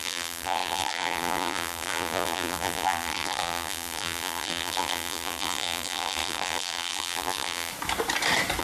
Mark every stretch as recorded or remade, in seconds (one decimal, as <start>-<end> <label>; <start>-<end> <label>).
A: 0.0-7.7 remade; 7.7-8.6 recorded